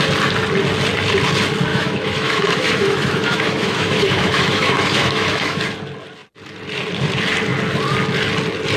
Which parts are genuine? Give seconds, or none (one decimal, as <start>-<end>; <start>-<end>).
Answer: 0.0-1.7; 5.6-8.8